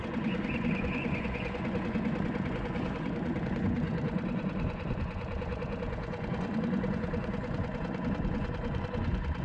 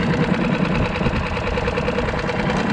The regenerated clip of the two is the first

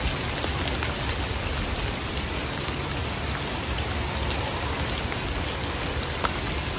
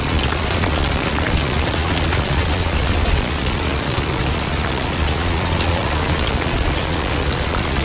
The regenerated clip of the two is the second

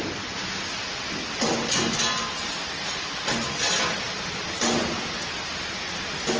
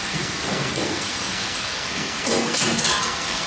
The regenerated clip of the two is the second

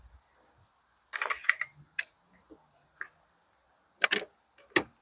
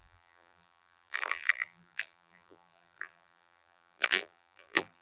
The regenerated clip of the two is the second